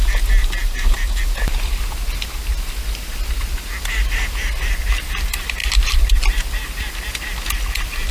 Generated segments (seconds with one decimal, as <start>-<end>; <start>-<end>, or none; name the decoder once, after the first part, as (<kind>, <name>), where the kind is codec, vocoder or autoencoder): none